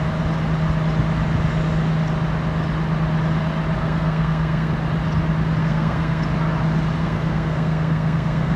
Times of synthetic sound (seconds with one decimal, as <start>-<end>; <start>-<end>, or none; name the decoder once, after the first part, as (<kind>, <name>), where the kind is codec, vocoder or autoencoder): 3.8-4.7 (codec, SNAC); 5.6-6.2; 7.0-8.6